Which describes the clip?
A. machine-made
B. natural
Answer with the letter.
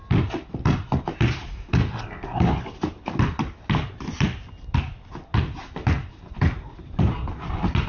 B